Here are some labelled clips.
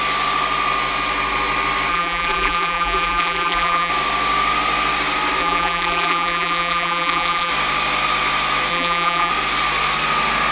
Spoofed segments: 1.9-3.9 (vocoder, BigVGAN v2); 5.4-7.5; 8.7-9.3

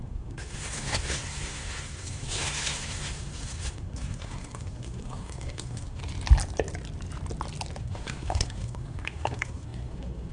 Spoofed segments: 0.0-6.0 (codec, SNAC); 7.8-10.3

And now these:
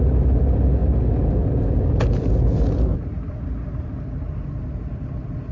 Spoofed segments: none

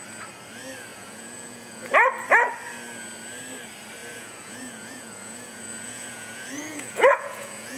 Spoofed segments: 0.9-1.9 (vocoder, Vocos); 4.0-7.8

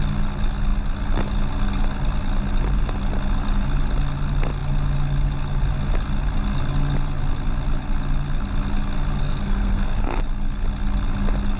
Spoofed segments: 9.2-10.2 (codec, SNAC)